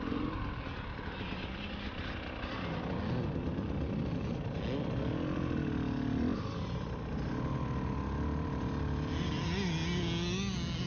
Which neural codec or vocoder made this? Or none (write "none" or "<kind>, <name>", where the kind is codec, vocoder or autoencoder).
none